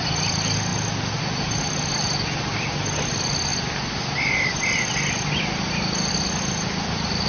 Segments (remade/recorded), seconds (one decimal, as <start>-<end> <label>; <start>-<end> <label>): 0.0-7.3 recorded